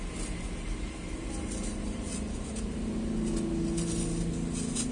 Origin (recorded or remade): recorded